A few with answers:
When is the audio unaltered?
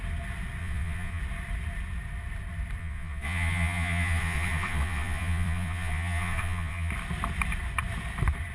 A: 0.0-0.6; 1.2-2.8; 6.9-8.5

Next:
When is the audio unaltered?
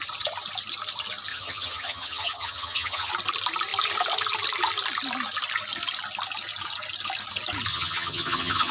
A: 0.0-1.3; 3.1-7.7